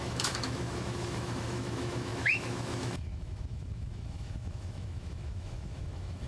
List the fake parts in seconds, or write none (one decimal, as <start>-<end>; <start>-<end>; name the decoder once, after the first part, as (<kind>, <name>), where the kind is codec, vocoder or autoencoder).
0.0-6.3 (autoencoder, DAC-VAE)